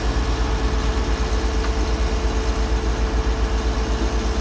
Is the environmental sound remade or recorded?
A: recorded